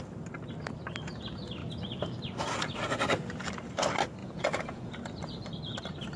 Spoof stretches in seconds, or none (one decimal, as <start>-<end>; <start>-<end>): 4.2-4.9